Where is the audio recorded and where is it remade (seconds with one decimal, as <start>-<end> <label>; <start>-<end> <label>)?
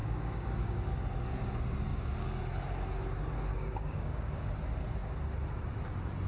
0.0-0.9 remade; 0.9-1.9 recorded; 1.9-2.4 remade; 2.4-3.5 recorded; 3.5-4.5 remade; 4.5-6.3 recorded